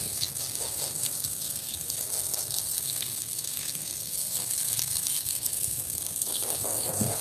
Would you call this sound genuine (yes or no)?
no